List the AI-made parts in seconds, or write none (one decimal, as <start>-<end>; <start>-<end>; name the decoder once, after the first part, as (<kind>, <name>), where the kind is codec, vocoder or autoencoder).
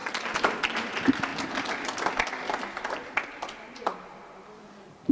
0.0-0.5 (vocoder, BigVGAN v2)